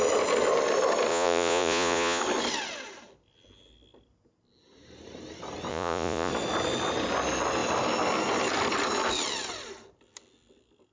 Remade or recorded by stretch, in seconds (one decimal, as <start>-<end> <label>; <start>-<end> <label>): 0.0-1.1 recorded; 1.1-2.2 remade; 2.2-5.7 recorded; 5.7-6.3 remade; 6.3-10.9 recorded